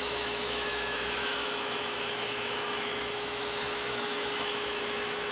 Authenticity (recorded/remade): remade